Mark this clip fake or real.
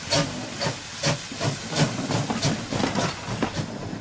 real